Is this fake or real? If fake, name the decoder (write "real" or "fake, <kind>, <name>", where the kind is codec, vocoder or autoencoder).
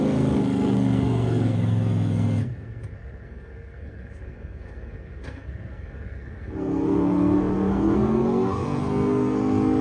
fake, codec, SNAC